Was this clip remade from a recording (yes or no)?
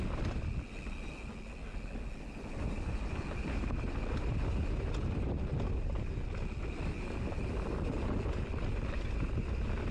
no